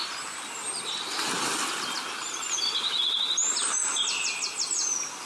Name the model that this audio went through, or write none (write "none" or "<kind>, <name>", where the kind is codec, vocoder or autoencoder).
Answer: none